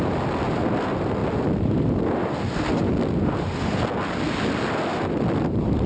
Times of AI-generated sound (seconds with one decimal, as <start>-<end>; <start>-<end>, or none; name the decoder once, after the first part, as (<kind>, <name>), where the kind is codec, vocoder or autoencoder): 0.0-1.2 (vocoder, BigVGAN v2); 2.0-2.8; 4.8-5.9